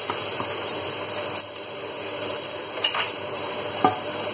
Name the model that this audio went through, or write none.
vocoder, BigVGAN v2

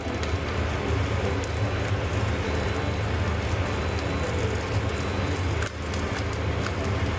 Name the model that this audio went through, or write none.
none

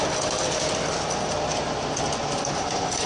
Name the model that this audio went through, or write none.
none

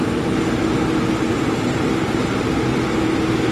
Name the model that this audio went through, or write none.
none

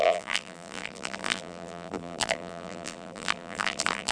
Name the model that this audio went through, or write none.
vocoder, BigVGAN v2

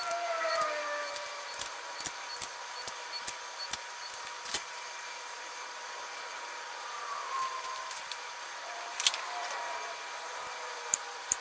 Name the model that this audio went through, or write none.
vocoder, BigVGAN v2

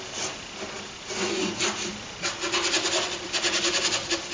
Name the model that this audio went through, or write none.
vocoder, BigVGAN v2